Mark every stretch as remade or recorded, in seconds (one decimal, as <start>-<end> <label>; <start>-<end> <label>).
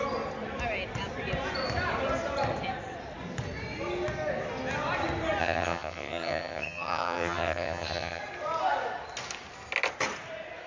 0.0-5.4 recorded; 5.4-8.2 remade; 8.2-10.7 recorded